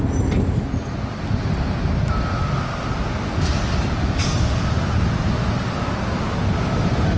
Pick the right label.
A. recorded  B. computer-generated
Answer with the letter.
A